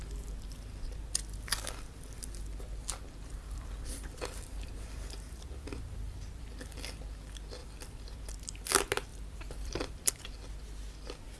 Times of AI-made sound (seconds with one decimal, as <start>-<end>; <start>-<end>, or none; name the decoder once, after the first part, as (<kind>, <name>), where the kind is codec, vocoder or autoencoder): 3.3-6.5 (vocoder, BigVGAN v2); 7.6-8.2; 9.1-10.1